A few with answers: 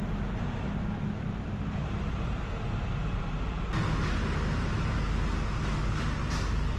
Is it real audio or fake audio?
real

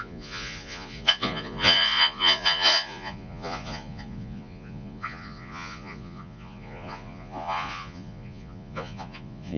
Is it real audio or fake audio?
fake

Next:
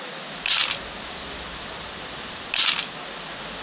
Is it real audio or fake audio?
real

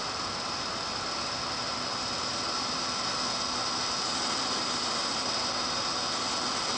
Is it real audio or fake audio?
real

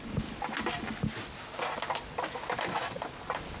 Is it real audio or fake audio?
real